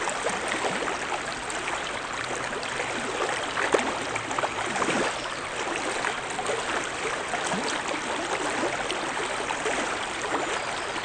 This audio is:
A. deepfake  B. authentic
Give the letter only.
B